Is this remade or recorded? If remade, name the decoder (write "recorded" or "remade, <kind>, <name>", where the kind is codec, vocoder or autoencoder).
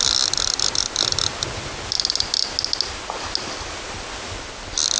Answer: recorded